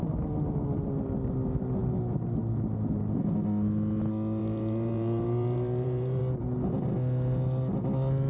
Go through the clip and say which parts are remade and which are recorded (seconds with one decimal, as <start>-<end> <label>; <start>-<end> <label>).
0.0-4.4 recorded; 4.4-6.2 remade; 6.2-8.3 recorded